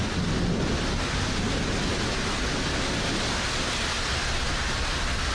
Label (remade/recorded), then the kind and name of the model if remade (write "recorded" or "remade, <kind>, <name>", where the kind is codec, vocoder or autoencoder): recorded